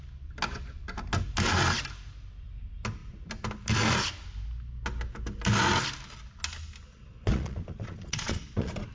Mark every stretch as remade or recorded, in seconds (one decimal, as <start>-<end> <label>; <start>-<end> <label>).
0.0-6.9 recorded; 6.9-8.9 remade